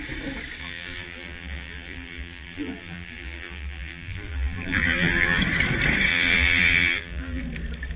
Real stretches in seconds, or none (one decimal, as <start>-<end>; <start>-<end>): 0.0-0.6; 5.4-6.1; 7.4-8.0